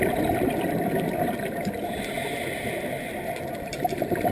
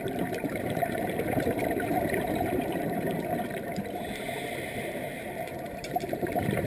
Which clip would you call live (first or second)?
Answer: first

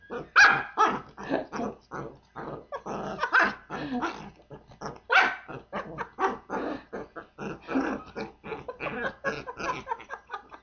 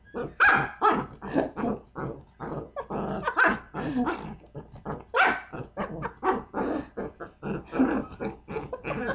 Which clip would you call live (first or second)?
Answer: first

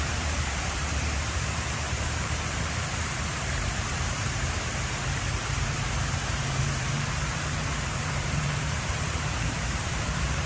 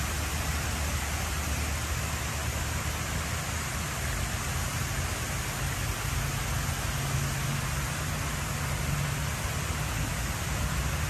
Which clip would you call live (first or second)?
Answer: second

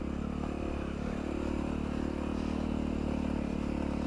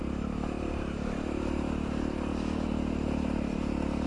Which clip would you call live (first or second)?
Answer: first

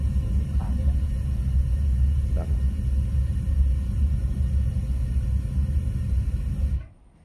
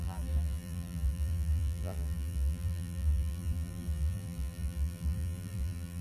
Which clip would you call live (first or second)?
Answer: first